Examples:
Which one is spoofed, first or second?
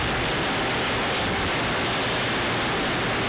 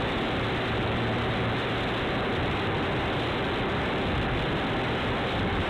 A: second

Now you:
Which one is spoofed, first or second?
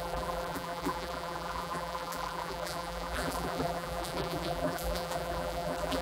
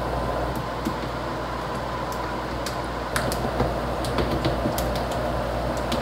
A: first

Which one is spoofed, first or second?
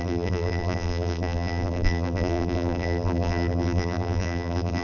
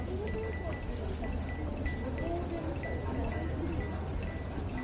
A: first